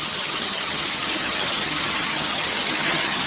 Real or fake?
fake